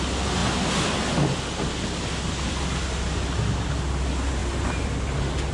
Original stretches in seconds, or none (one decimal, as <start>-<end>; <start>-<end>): 0.0-5.5